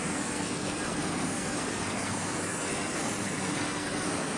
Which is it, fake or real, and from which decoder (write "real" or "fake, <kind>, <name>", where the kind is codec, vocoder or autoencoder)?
fake, codec, SNAC